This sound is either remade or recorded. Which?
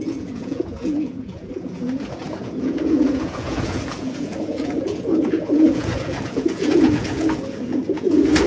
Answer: remade